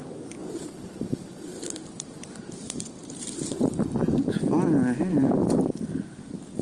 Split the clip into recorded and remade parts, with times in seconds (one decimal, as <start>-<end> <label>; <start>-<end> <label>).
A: 0.0-1.5 recorded; 1.5-4.2 remade; 4.2-5.1 recorded; 5.1-5.9 remade; 5.9-6.6 recorded